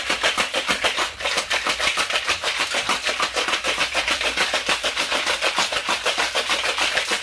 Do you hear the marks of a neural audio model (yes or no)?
yes